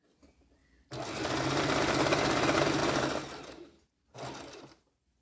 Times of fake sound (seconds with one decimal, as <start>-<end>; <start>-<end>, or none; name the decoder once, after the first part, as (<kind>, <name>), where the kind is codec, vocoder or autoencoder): none